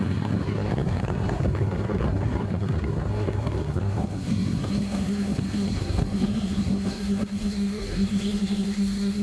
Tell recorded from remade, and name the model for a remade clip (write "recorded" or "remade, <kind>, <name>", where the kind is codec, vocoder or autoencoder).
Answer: remade, codec, SNAC